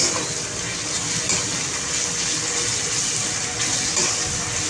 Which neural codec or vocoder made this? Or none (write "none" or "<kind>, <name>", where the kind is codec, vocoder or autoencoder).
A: none